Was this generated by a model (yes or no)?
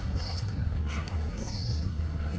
yes